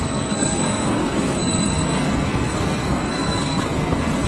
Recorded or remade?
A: remade